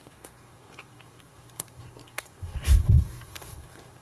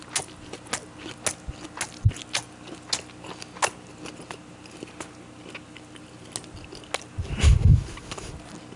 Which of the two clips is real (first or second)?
second